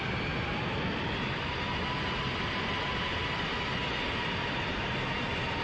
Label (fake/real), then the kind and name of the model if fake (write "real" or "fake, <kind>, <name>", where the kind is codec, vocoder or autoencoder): real